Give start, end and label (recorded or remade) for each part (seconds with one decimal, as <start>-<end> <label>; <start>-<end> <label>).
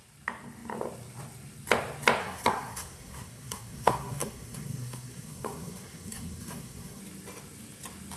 0.0-2.2 recorded; 2.2-7.0 remade; 7.0-8.2 recorded